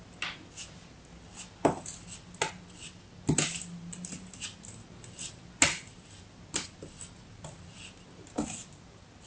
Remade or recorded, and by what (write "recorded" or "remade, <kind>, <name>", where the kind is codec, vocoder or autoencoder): recorded